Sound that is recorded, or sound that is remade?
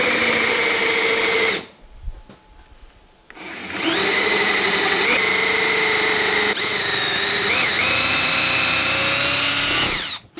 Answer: recorded